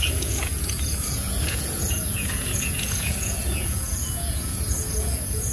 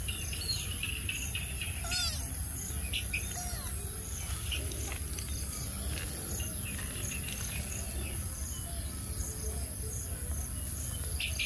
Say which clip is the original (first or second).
second